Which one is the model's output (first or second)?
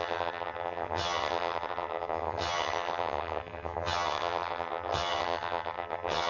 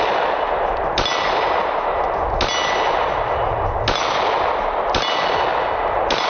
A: first